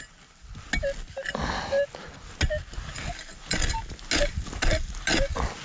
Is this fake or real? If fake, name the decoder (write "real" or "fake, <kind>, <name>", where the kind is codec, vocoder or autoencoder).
real